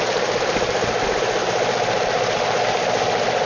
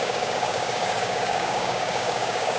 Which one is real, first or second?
first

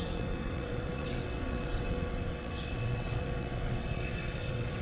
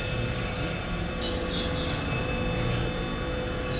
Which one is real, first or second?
second